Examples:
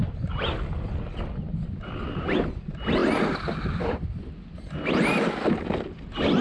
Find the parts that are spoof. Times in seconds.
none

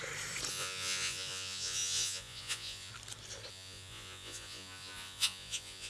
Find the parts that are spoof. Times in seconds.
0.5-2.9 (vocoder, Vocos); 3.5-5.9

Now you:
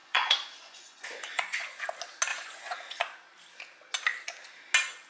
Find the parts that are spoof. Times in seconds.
0.0-1.8 (vocoder, Vocos); 2.3-3.0

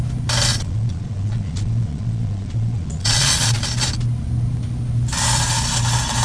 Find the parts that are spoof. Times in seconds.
0.5-3.6 (vocoder, Vocos)

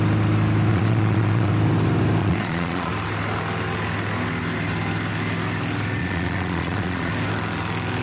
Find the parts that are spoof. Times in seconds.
0.7-1.5 (vocoder, Vocos); 2.2-2.9; 6.0-7.1

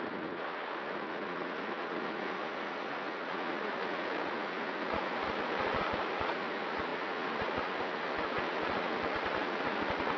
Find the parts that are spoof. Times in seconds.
0.0-10.2 (vocoder, Vocos)

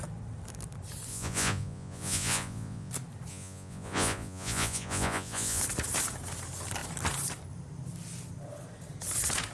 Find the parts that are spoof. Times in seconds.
1.1-2.9 (vocoder, Vocos); 3.3-5.6

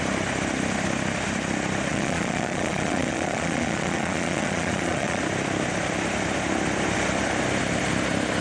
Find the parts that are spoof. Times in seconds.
1.9-5.2 (vocoder, Vocos)